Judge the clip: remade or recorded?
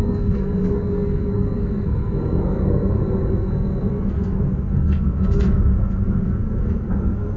remade